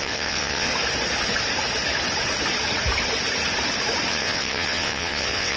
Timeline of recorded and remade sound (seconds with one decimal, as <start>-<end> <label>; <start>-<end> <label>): 0.0-0.7 remade; 0.7-4.1 recorded; 4.1-5.6 remade